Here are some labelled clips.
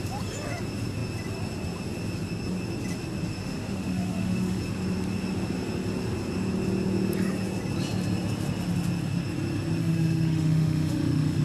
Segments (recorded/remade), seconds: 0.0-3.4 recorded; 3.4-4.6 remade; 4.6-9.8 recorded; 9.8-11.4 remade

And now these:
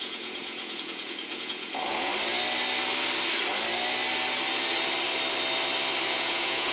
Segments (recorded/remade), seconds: 0.0-2.1 remade; 2.1-6.1 recorded; 6.1-6.7 remade